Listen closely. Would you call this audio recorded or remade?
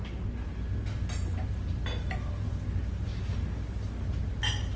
recorded